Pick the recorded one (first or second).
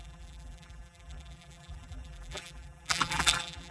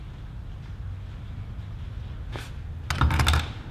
second